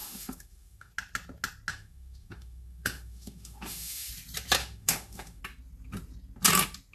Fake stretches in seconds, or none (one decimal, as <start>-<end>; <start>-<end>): 0.0-0.9; 1.7-4.1; 4.6-5.4